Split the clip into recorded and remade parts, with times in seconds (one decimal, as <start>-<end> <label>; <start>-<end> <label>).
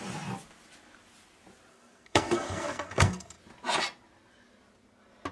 0.0-1.7 recorded; 1.7-3.4 remade; 3.4-5.3 recorded